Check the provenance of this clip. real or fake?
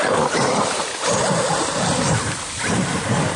real